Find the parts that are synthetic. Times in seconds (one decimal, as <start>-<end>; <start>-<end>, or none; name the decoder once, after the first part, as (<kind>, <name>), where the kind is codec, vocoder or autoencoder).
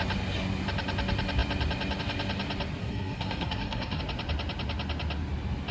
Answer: 2.8-4.0 (codec, SNAC)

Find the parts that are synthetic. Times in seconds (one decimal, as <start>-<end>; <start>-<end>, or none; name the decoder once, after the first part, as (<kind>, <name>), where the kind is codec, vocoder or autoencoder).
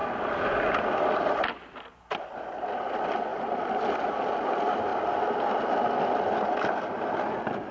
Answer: none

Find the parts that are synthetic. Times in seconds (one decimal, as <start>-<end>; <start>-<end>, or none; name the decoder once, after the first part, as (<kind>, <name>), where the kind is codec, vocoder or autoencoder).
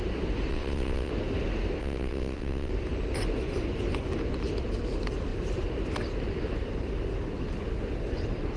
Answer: 0.5-1.1 (vocoder, WaveNeXt); 1.8-2.7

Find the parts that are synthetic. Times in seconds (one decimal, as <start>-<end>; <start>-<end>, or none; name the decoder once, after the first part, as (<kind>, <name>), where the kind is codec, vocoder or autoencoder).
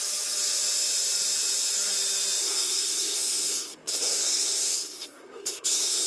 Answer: 2.4-6.1 (codec, SNAC)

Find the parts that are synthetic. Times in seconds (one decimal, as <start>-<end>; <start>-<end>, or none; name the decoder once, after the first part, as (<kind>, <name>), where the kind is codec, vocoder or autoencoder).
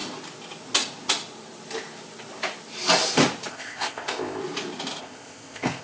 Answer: 3.5-4.4 (codec, ZipCodec); 5.0-5.8